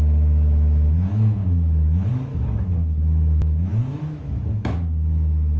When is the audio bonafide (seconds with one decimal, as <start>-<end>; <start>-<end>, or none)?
none